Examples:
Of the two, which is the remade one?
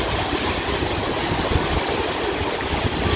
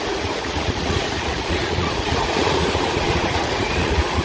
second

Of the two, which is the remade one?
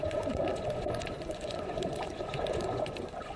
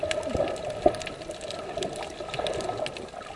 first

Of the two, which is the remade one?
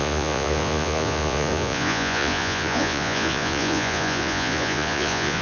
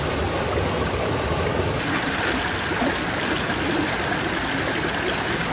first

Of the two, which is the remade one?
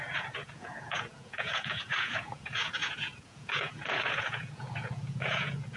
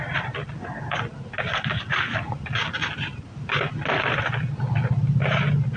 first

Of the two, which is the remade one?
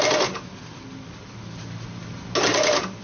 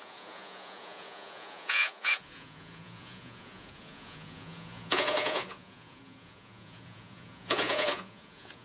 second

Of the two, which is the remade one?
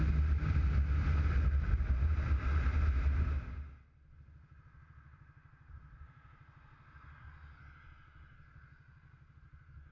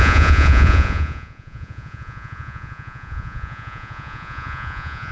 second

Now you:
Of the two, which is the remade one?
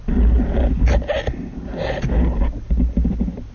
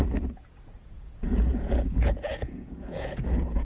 second